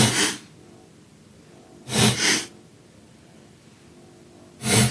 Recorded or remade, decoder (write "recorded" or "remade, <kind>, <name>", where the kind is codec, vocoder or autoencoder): recorded